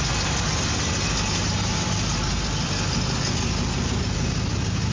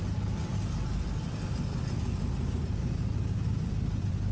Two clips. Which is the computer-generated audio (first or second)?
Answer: second